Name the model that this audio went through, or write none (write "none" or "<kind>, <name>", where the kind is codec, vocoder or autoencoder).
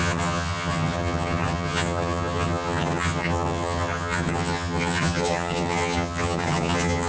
vocoder, HiFi-GAN